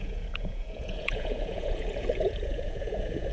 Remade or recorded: remade